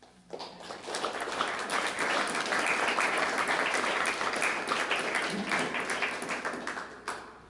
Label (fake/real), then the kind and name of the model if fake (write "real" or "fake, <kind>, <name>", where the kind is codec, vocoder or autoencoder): real